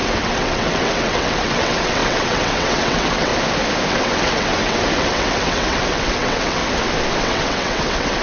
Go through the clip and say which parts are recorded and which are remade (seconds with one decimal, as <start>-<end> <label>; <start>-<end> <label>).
0.0-3.3 remade; 3.3-3.9 recorded; 3.9-6.6 remade; 6.6-7.2 recorded; 7.2-8.2 remade